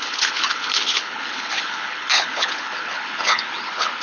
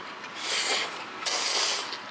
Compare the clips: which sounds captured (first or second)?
second